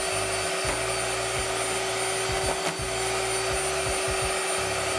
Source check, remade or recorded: recorded